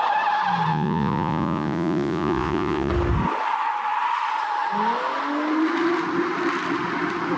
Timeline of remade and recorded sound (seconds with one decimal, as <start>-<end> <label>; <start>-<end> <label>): 0.0-0.7 recorded; 0.7-2.9 remade; 2.9-7.4 recorded